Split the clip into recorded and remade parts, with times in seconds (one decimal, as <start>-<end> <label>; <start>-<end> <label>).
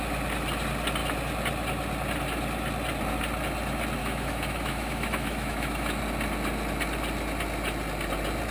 0.0-4.0 recorded; 4.0-6.0 remade; 6.0-8.5 recorded